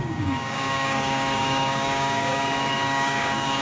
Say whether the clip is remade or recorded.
remade